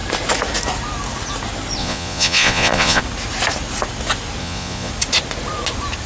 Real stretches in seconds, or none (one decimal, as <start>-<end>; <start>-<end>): 0.0-1.8; 3.0-4.4; 4.9-6.1